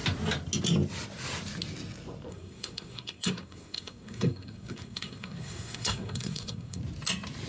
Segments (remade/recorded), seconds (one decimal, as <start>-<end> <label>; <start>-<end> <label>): 0.0-2.3 recorded; 2.3-6.8 remade; 6.8-7.5 recorded